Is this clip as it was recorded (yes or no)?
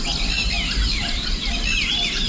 no